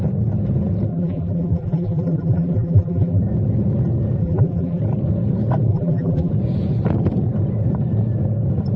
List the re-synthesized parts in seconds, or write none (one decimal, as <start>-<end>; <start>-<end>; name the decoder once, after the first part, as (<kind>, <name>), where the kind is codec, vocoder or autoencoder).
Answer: 0.9-3.2 (vocoder, BigVGAN v2); 4.2-4.8; 5.7-6.3